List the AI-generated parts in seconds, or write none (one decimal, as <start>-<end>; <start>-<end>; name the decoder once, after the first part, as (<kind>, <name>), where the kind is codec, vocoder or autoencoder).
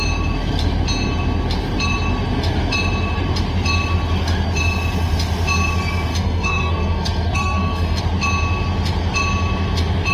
6.1-8.0 (codec, SNAC)